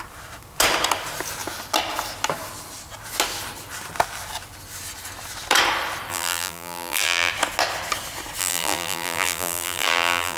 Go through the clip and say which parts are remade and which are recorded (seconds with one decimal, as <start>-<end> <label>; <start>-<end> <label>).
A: 0.0-6.1 recorded; 6.1-7.3 remade; 7.3-8.4 recorded; 8.4-10.4 remade